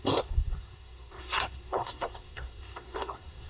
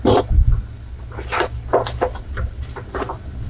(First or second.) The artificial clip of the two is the first